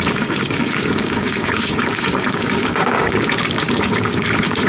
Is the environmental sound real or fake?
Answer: fake